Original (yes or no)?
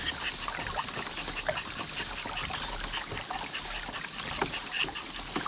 yes